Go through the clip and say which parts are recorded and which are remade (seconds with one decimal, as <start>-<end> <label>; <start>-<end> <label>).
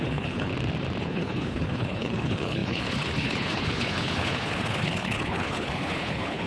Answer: 0.0-0.5 remade; 0.5-1.0 recorded; 1.0-6.5 remade